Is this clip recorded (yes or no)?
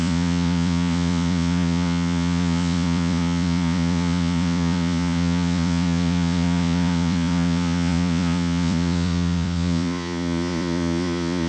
no